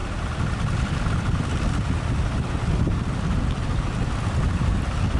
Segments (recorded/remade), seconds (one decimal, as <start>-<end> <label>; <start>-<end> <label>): 0.0-5.2 recorded